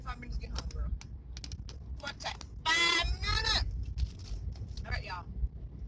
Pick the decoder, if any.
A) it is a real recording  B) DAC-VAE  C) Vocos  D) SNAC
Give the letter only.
A